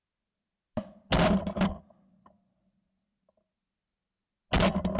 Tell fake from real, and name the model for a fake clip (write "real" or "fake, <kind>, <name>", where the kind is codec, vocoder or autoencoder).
real